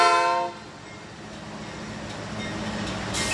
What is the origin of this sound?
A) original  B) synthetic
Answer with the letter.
A